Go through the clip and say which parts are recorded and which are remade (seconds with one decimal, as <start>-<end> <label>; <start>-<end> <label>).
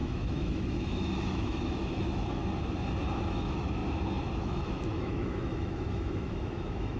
0.0-2.4 remade; 2.4-3.3 recorded; 3.3-3.8 remade; 3.8-4.4 recorded; 4.4-7.0 remade